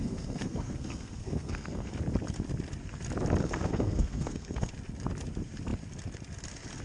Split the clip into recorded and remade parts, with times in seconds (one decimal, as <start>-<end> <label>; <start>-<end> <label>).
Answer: 0.0-1.9 remade; 1.9-3.4 recorded; 3.4-4.7 remade; 4.7-6.8 recorded